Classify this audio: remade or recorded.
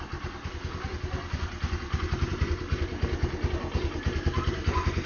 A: recorded